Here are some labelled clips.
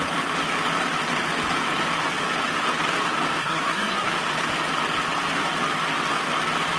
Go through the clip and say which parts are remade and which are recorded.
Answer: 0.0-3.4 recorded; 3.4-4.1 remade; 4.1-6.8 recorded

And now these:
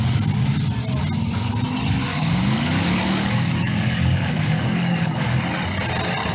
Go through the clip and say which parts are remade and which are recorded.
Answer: 0.0-2.1 recorded; 2.1-5.4 remade; 5.4-6.3 recorded